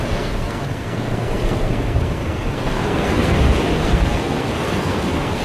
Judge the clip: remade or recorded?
remade